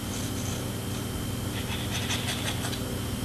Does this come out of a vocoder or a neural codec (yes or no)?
no